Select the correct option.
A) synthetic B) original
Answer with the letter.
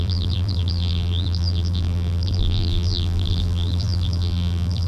A